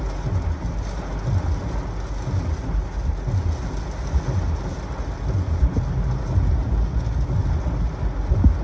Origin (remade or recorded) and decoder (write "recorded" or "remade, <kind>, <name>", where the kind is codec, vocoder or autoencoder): recorded